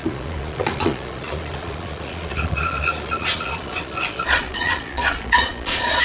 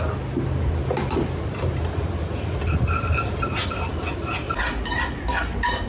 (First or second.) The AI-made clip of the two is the first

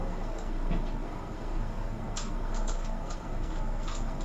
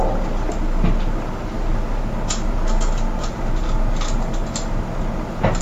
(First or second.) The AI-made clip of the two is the first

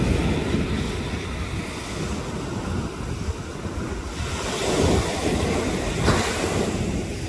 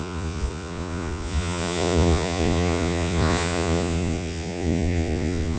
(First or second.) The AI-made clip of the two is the second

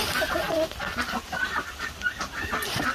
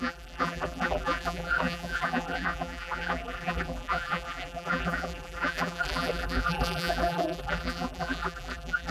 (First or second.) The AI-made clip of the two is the second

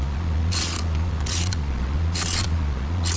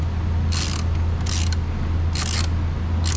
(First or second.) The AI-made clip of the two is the first